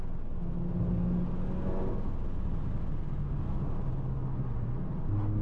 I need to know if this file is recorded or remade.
recorded